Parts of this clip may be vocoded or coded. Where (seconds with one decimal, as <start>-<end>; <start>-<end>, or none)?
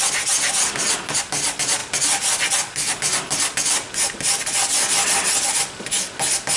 none